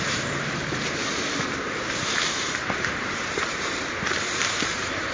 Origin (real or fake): fake